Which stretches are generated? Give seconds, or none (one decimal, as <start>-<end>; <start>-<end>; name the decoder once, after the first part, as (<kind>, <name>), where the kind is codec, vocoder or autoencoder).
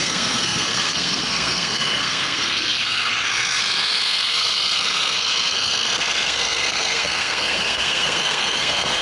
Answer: 0.0-9.0 (codec, SNAC)